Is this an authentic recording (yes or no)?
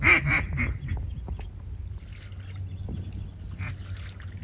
yes